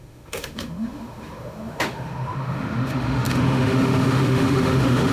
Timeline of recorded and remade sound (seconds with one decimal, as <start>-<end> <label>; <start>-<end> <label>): 0.0-5.1 remade